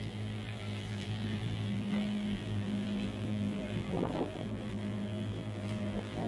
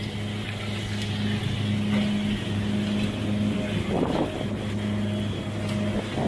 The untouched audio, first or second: second